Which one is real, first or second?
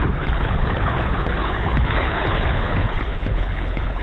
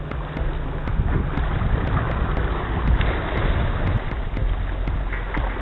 second